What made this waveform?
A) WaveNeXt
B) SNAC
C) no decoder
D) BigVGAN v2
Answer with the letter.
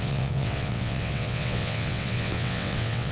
A